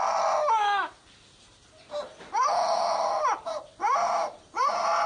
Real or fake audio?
real